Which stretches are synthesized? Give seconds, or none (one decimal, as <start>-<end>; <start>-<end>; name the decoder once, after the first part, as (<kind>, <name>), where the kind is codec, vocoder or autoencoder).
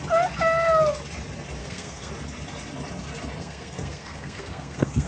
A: 1.6-2.1 (codec, SNAC); 3.4-5.1